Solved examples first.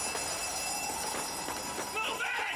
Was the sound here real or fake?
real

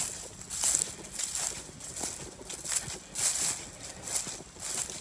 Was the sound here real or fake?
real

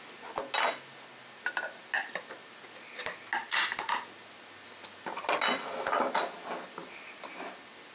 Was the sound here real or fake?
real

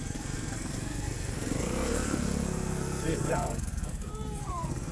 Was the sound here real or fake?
fake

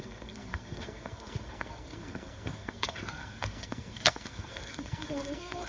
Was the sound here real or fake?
fake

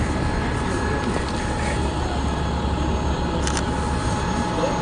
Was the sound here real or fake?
real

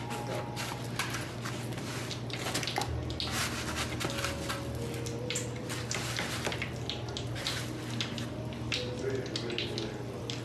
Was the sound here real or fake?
real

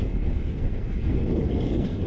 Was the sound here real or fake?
fake